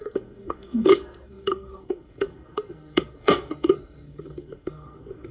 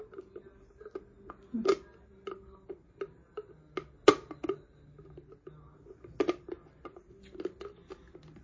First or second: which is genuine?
second